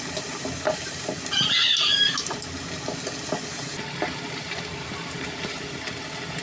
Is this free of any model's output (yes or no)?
yes